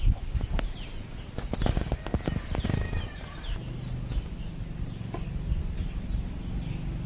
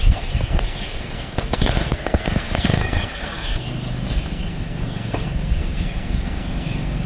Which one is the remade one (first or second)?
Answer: second